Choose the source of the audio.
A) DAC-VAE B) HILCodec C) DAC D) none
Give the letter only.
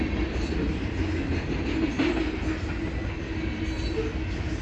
D